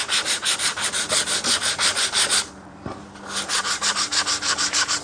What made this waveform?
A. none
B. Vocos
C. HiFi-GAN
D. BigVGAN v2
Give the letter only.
D